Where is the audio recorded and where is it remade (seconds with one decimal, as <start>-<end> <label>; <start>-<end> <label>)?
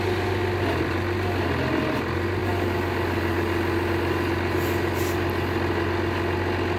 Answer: 0.0-6.8 recorded